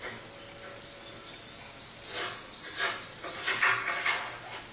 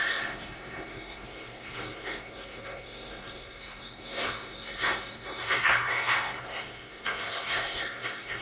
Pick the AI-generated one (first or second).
second